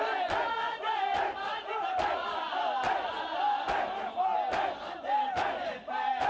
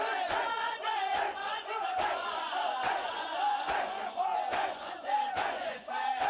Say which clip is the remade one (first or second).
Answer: second